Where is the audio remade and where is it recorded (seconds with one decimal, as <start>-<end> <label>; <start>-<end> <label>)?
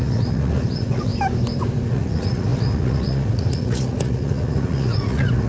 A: 0.0-1.1 remade; 1.1-1.9 recorded; 1.9-5.5 remade